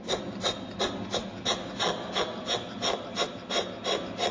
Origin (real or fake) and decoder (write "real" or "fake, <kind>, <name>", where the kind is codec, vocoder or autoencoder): real